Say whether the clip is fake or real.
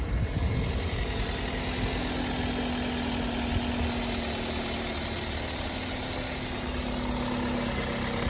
real